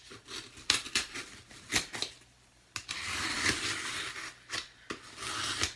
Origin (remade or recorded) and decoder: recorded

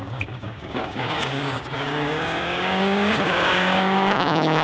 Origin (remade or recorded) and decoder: remade, codec, DAC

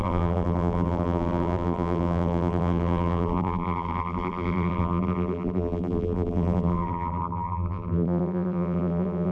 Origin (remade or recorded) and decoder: remade, vocoder, BigVGAN v2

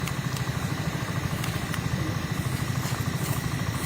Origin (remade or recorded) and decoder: recorded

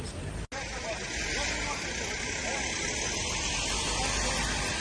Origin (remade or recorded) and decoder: recorded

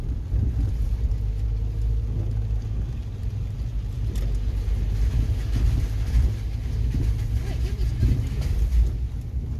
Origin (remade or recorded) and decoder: recorded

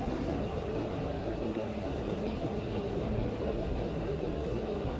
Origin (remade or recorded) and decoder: remade, codec, SNAC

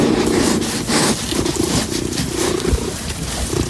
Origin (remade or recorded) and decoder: recorded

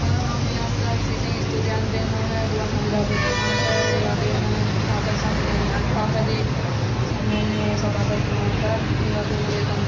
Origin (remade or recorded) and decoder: recorded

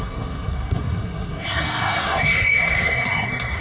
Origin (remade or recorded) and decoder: remade, codec, SNAC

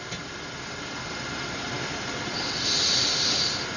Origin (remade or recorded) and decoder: recorded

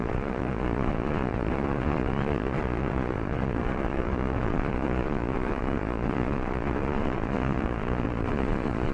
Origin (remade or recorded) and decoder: remade, vocoder, Vocos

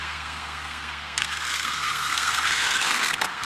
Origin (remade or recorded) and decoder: remade, codec, SNAC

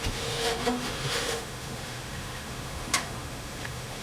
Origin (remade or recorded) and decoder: remade, autoencoder, DAC-VAE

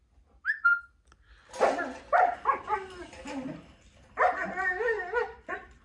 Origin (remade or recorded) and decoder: recorded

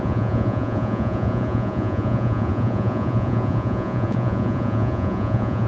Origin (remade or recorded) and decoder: remade, vocoder, Vocos